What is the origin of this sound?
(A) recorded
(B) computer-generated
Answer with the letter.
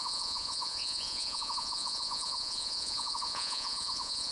B